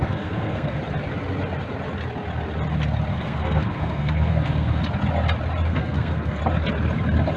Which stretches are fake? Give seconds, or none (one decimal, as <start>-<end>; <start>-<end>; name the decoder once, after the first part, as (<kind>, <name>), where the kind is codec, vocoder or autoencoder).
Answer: 0.0-0.8 (codec, SNAC); 3.1-4.8; 5.7-6.4